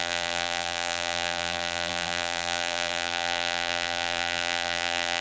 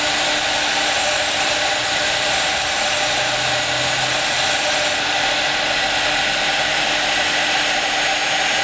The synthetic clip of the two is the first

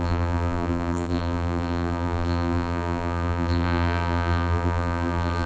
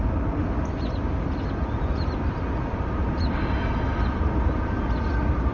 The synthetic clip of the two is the first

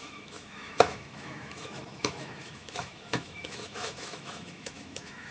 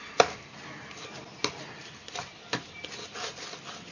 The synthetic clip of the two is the first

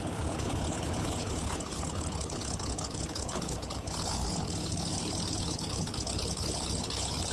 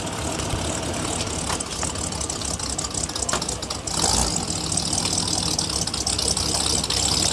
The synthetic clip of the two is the first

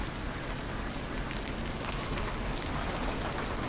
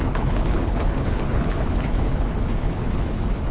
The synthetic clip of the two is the second